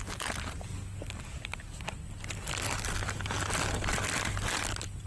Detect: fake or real real